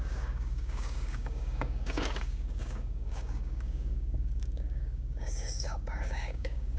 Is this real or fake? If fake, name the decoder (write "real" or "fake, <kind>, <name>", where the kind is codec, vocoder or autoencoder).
fake, codec, DAC